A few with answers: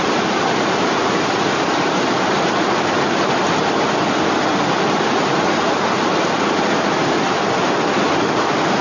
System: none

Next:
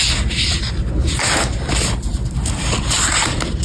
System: none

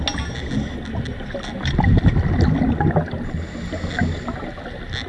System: none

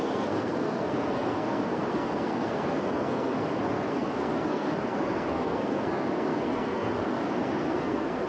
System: codec, SNAC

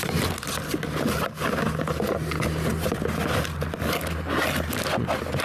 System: none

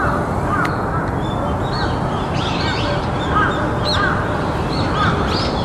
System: none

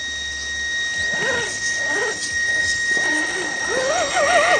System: none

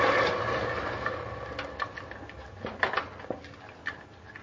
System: none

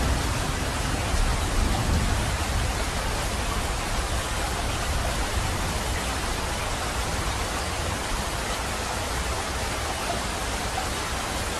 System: none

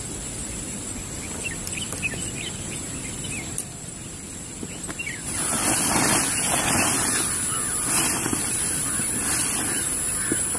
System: vocoder, BigVGAN v2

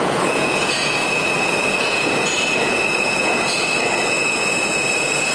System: vocoder, Vocos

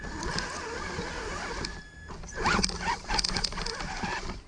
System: none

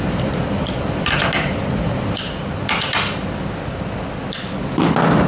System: none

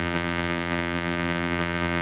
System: vocoder, BigVGAN v2